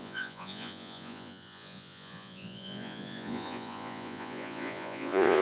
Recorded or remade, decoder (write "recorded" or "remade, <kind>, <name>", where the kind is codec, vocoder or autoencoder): remade, vocoder, Vocos